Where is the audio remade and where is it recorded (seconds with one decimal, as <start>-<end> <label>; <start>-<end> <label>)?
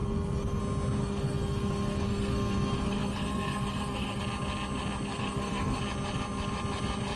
0.0-0.6 remade; 0.6-1.0 recorded; 1.0-4.2 remade; 4.2-5.1 recorded; 5.1-5.8 remade; 5.8-7.2 recorded